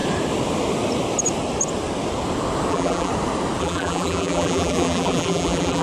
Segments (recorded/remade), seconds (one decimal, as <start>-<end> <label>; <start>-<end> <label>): 0.0-2.7 recorded; 2.7-3.1 remade; 3.1-3.6 recorded; 3.6-5.8 remade